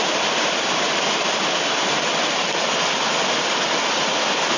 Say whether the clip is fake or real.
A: real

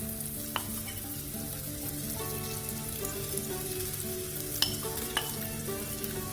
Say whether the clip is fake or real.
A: real